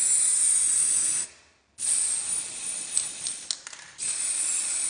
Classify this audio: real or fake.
real